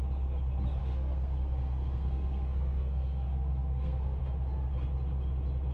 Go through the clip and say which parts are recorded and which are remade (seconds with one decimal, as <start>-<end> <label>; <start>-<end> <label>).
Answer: 0.0-0.8 recorded; 0.8-4.2 remade; 4.2-5.7 recorded